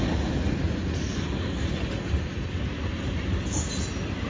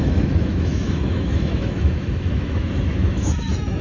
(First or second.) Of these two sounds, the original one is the first